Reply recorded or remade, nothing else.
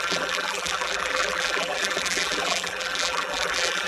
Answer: remade